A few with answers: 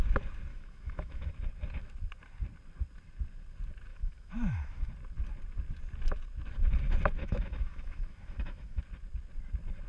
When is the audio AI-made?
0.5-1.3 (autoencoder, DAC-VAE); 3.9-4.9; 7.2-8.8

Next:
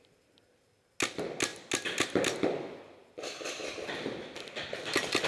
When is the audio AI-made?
none

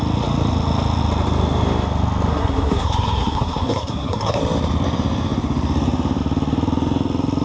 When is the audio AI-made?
2.3-4.4 (codec, SNAC)

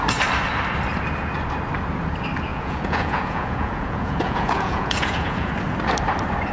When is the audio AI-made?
2.5-5.5 (vocoder, Vocos)

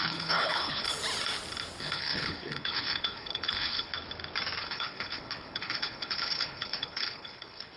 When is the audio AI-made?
0.0-1.0 (codec, HILCodec); 1.8-3.9; 4.6-7.8

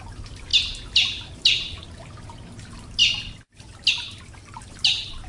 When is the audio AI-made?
none

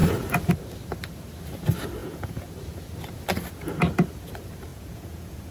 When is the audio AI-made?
2.0-2.5 (vocoder, Vocos); 4.7-5.5